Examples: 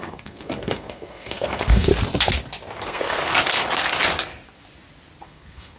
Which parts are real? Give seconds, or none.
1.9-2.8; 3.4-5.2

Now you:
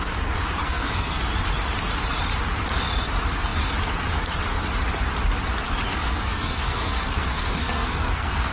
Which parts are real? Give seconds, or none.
0.0-0.6; 1.2-5.9

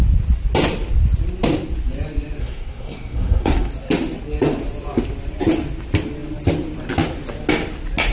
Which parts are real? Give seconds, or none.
0.0-2.4; 3.7-8.1